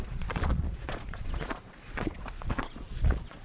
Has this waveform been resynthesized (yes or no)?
yes